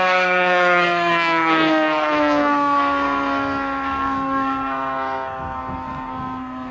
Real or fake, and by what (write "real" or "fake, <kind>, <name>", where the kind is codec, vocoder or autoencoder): fake, codec, SNAC